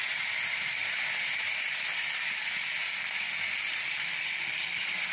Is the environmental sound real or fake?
real